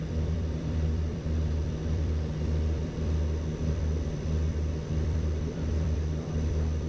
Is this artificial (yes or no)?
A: yes